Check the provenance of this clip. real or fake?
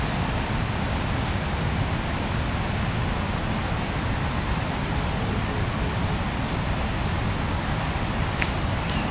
real